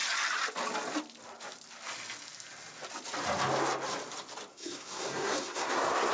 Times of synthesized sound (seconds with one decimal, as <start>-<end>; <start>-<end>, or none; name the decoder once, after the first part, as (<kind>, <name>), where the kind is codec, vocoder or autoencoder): 4.5-6.1 (codec, SNAC)